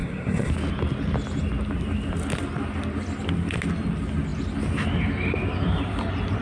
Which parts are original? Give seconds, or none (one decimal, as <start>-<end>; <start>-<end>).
0.5-6.4